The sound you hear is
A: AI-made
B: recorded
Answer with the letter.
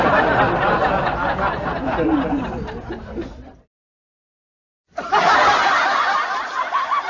B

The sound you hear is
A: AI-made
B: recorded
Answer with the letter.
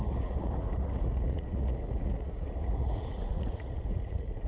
A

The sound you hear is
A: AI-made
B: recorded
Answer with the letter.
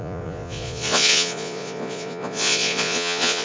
A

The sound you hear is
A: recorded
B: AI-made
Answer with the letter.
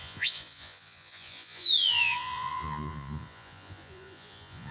B